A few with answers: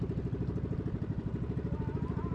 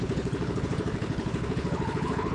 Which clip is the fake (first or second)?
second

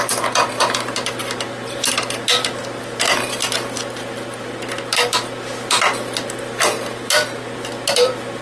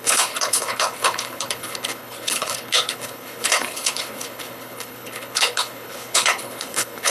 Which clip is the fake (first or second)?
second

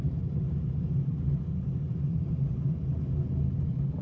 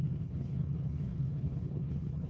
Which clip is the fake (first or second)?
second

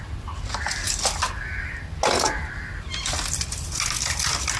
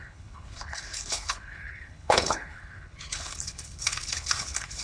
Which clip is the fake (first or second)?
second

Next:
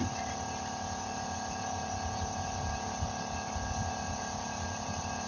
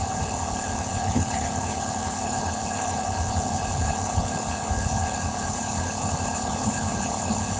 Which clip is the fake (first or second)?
second